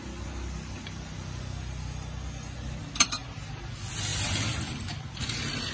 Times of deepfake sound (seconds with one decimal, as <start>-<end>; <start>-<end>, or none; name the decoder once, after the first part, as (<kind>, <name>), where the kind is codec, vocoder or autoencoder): 4.1-5.2 (vocoder, BigVGAN v2)

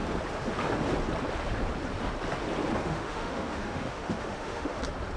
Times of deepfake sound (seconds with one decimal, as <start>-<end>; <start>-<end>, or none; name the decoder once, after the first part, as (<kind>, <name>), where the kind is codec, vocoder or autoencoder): 2.8-4.8 (autoencoder, DAC-VAE)

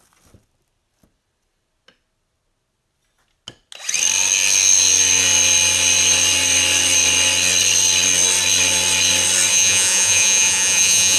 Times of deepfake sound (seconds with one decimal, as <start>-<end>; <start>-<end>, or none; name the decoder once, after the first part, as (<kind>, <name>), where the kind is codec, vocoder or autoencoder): 9.5-11.2 (vocoder, Vocos)

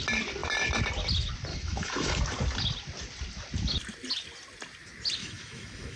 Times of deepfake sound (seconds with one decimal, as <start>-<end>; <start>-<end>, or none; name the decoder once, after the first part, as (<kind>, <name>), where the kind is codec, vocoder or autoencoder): 1.5-2.2 (autoencoder, DAC-VAE); 5.2-6.0